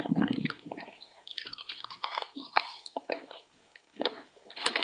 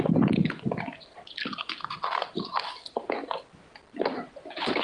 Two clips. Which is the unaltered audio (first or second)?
second